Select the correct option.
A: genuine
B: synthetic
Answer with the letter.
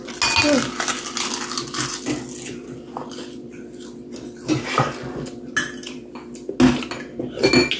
A